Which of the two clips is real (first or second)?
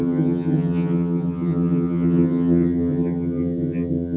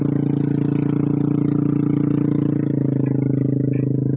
second